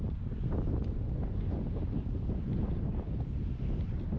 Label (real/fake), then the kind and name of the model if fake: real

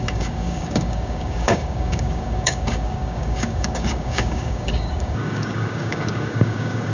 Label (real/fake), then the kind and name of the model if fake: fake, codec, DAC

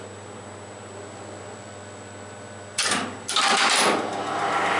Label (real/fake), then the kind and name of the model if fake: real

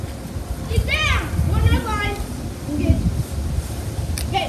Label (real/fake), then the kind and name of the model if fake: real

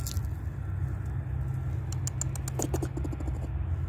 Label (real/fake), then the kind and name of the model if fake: real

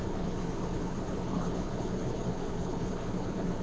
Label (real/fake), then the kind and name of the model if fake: fake, codec, HILCodec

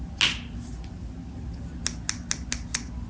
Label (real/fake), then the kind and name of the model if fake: real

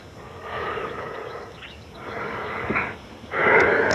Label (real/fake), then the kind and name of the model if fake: fake, codec, DAC